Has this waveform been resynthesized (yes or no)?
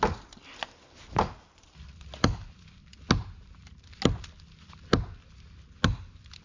no